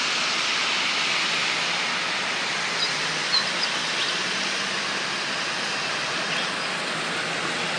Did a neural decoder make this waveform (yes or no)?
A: no